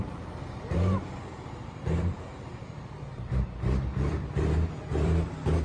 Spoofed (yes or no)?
yes